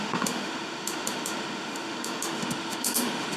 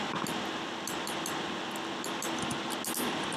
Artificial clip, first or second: first